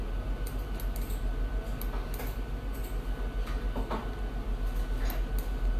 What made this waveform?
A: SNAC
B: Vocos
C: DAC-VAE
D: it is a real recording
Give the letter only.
D